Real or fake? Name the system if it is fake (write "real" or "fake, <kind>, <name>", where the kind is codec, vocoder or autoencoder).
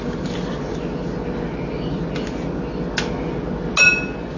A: real